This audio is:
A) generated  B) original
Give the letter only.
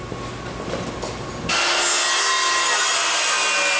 B